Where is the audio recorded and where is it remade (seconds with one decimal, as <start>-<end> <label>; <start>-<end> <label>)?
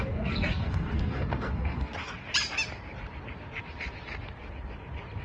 0.0-1.9 remade; 1.9-5.2 recorded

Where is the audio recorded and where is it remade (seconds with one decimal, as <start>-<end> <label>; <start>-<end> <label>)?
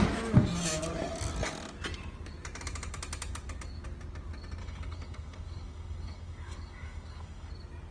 0.0-4.6 recorded; 4.6-7.5 remade; 7.5-7.9 recorded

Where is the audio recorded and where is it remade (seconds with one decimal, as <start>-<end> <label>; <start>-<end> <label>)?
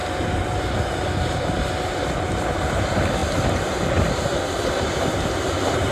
0.0-4.3 recorded; 4.3-5.3 remade; 5.3-5.9 recorded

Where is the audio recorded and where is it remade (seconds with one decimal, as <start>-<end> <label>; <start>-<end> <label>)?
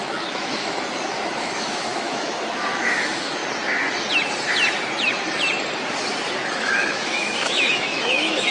0.0-3.4 remade; 3.4-6.5 recorded; 6.5-8.5 remade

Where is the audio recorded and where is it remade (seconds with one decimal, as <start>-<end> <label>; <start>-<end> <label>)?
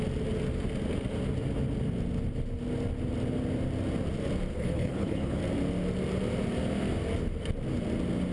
0.0-4.5 recorded; 4.5-5.4 remade; 5.4-8.3 recorded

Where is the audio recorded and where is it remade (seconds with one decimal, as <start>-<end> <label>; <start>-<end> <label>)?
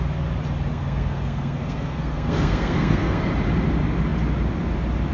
0.0-0.7 recorded; 0.7-3.3 remade; 3.3-5.1 recorded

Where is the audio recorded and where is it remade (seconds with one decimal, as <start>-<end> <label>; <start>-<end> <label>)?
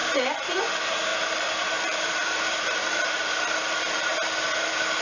0.0-0.6 remade; 0.6-1.1 recorded; 1.1-4.1 remade; 4.1-5.0 recorded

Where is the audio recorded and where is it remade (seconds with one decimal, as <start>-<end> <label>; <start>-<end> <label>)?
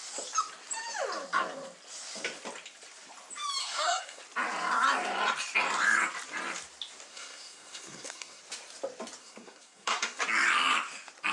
0.0-3.6 recorded; 3.6-4.2 remade; 4.2-7.1 recorded; 7.1-8.4 remade; 8.4-9.2 recorded; 9.2-10.2 remade; 10.2-11.3 recorded